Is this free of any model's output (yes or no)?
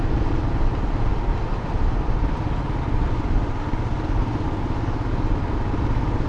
yes